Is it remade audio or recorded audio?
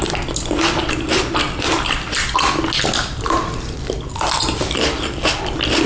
recorded